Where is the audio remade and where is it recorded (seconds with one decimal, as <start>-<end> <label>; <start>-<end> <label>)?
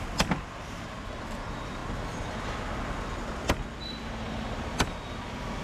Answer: 0.0-5.6 recorded